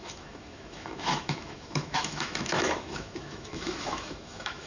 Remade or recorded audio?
remade